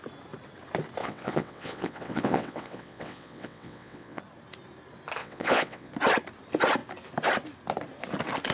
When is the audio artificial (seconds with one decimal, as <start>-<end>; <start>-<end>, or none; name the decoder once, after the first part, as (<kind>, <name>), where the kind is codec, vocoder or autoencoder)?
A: 1.0-4.2 (vocoder, WaveNeXt); 5.2-5.9